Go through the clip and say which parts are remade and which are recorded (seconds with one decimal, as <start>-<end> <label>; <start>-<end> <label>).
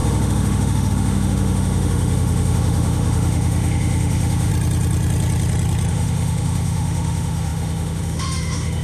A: 0.0-4.5 remade; 4.5-5.9 recorded; 5.9-8.8 remade